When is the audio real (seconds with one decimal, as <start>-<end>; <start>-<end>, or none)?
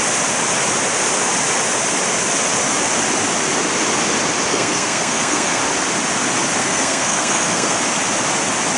0.0-4.5; 5.6-6.6; 7.8-8.8